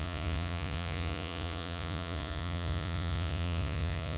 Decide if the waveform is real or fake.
fake